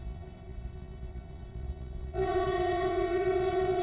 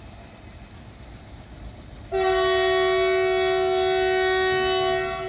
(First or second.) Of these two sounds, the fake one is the first